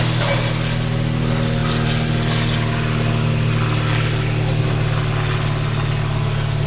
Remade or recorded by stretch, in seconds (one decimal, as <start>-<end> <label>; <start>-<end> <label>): 0.0-6.7 recorded